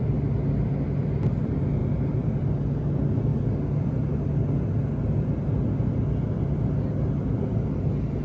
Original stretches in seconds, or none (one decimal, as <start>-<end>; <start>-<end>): 0.0-8.2